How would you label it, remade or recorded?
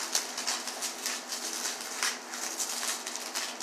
recorded